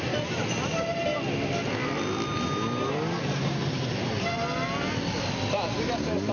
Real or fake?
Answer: real